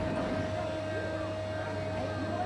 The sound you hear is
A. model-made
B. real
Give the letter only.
B